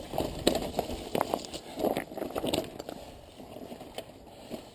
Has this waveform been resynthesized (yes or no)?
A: no